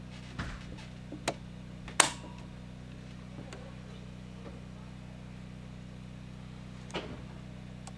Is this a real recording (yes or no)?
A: yes